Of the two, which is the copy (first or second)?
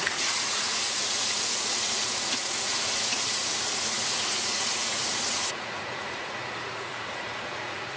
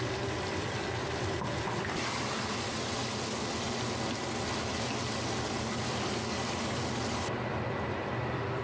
first